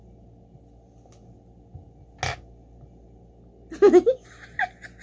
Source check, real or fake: real